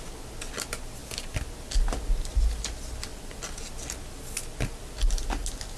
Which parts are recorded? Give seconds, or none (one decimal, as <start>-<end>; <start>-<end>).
0.0-5.8